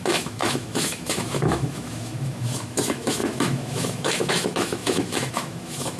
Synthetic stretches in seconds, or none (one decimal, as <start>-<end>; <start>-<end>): 0.0-6.0